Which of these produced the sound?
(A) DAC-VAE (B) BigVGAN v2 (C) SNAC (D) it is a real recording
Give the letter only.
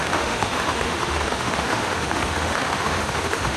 A